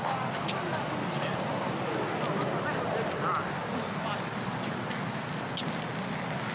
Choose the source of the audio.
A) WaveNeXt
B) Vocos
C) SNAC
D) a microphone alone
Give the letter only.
D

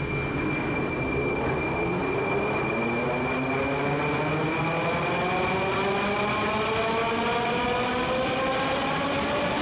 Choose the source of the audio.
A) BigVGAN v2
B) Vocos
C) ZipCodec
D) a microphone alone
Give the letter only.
D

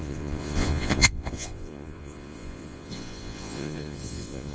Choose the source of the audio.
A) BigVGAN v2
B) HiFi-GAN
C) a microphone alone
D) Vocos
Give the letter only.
D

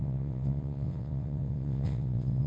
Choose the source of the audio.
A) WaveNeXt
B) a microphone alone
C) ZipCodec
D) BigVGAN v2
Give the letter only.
A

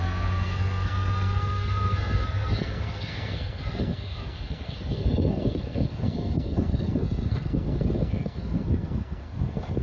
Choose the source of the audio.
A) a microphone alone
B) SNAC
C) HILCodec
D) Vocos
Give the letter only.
B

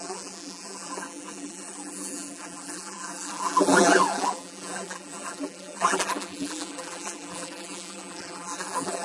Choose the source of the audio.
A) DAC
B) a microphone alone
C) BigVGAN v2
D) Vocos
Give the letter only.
C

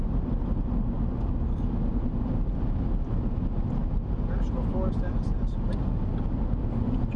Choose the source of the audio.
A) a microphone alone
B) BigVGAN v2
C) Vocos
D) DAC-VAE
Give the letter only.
A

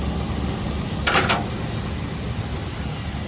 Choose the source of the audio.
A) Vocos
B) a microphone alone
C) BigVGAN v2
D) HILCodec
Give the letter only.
B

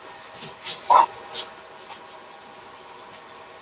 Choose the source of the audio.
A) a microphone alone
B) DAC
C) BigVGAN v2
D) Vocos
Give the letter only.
A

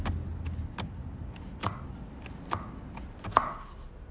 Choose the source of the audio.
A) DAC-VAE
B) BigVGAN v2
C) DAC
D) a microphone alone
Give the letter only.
D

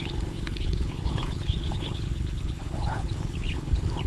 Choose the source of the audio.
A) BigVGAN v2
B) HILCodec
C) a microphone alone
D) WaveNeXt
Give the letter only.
B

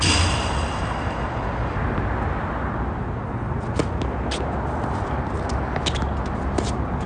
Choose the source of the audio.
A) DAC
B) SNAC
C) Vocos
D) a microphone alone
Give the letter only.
D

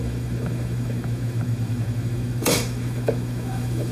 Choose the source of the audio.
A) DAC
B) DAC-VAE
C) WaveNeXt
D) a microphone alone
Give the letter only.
B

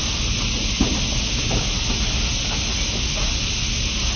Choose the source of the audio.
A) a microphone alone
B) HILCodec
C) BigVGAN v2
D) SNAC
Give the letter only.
A